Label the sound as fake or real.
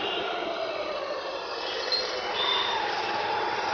real